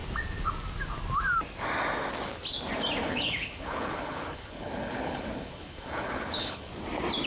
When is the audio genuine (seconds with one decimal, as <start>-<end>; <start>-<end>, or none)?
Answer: 0.0-3.0; 6.7-7.3

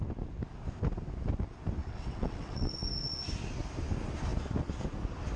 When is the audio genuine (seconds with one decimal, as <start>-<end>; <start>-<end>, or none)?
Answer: 0.0-1.8; 2.7-5.4

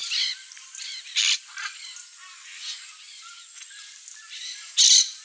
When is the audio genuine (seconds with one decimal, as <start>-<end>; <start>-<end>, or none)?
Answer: 0.0-2.2; 3.9-5.2

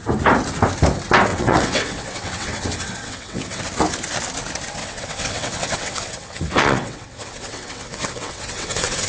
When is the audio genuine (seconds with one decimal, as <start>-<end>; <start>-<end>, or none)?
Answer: 0.0-1.3; 3.6-4.8

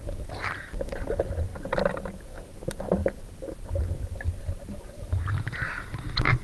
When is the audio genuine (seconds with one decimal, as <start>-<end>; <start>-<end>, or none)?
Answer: 0.0-6.4

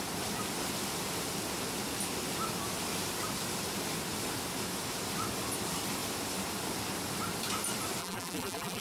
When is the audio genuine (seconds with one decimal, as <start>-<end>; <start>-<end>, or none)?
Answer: 0.0-8.0

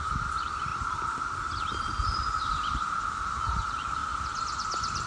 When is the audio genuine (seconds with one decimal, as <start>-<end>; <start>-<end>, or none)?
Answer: 0.0-5.1